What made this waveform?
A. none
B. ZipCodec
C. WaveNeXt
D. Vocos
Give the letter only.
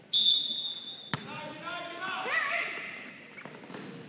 A